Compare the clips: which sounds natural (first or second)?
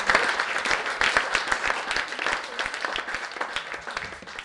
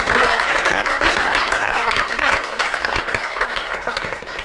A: first